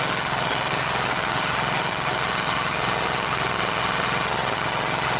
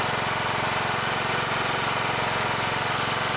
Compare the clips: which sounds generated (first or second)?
first